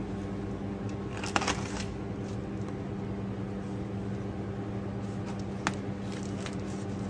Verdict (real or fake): real